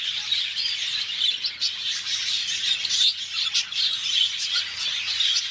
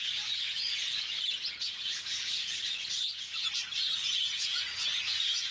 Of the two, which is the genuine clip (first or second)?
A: first